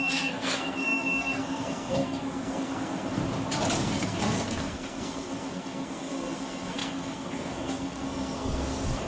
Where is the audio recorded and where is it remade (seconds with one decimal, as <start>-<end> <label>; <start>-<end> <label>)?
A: 0.0-3.2 remade; 3.2-3.8 recorded; 3.8-9.1 remade